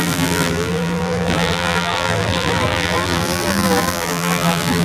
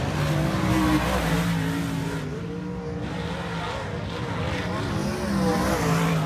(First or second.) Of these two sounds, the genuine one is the second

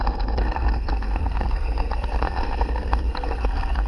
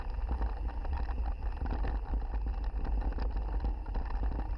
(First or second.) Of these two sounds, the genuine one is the second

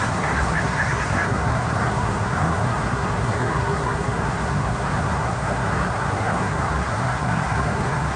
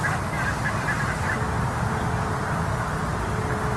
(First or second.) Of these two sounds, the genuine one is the second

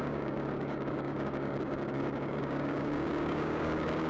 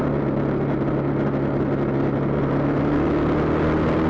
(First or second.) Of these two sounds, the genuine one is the second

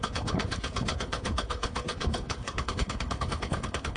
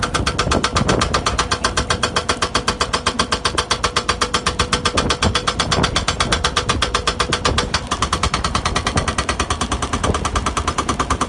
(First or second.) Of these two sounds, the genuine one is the second